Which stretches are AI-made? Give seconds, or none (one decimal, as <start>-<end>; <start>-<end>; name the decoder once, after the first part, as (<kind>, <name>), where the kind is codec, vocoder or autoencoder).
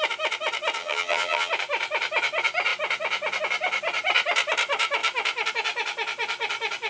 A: 0.8-1.5 (vocoder, HiFi-GAN)